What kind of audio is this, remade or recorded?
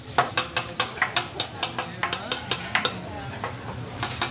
recorded